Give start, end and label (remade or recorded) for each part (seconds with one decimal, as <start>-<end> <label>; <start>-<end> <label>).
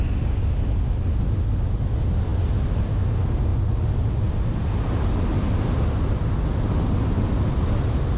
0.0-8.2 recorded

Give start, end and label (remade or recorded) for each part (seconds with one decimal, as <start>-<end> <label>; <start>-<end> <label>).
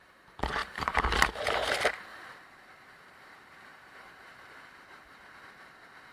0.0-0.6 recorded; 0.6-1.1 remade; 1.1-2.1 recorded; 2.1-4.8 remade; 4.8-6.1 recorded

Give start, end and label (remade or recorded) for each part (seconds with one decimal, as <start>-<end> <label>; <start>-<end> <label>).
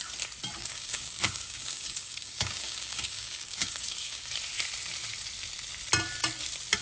0.0-0.6 recorded; 0.6-4.3 remade; 4.3-6.8 recorded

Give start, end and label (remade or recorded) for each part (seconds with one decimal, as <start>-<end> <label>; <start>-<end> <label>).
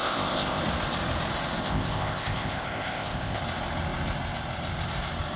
0.0-0.6 remade; 0.6-1.6 recorded; 1.6-3.4 remade; 3.4-5.4 recorded